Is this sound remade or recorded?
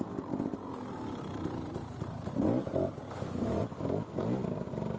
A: recorded